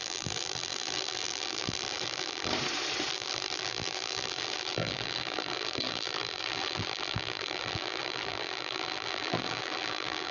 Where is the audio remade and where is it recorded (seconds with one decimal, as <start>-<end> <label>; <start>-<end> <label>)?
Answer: 0.0-2.5 remade; 2.5-3.1 recorded; 3.1-10.3 remade